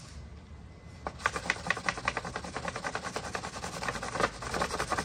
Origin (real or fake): real